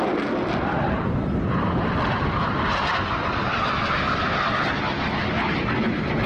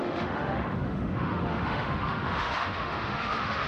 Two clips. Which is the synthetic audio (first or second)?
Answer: second